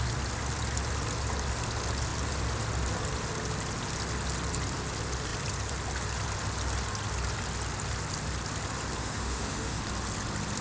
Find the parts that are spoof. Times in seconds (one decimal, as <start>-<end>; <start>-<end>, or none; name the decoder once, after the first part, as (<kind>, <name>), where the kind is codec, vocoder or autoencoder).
9.0-9.8 (autoencoder, DAC-VAE)